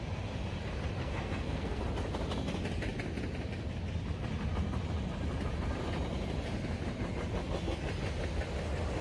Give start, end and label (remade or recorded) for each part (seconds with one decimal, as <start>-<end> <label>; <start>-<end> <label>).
0.0-1.0 recorded; 1.0-1.8 remade; 1.8-9.0 recorded